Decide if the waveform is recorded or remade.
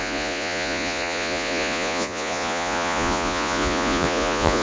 remade